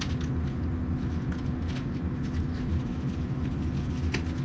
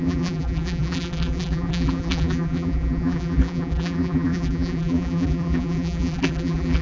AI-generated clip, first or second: second